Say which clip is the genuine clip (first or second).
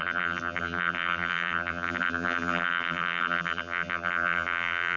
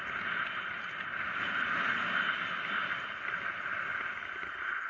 second